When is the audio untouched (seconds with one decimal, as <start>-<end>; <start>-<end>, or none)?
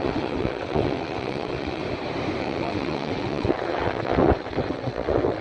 1.8-2.4